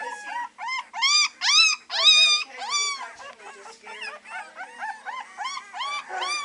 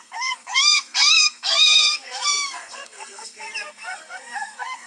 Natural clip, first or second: first